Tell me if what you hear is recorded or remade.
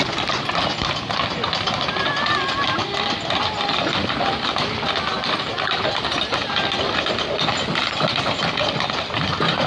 recorded